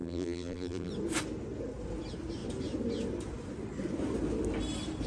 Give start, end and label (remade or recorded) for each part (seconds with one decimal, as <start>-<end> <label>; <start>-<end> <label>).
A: 0.0-0.9 remade; 0.9-5.1 recorded